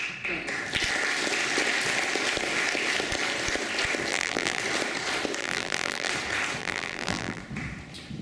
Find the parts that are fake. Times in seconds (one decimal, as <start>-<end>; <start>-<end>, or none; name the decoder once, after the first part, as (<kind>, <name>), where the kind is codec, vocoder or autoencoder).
4.1-4.6 (vocoder, BigVGAN v2); 5.4-6.1; 6.6-7.4